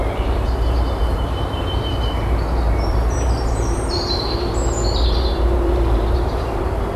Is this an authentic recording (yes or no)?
no